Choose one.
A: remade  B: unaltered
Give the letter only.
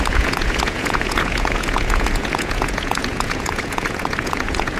A